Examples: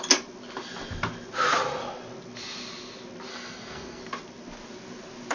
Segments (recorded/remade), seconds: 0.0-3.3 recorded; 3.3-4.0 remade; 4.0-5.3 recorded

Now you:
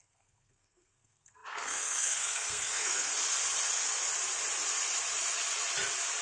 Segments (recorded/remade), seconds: 0.0-3.1 remade; 3.1-6.2 recorded

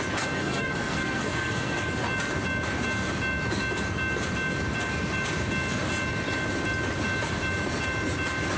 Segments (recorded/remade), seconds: 0.0-0.4 recorded; 0.4-1.9 remade; 1.9-8.6 recorded